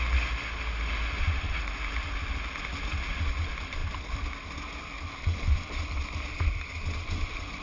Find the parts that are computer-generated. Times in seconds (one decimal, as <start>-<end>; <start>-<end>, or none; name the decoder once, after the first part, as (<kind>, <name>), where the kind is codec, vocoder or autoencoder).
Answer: none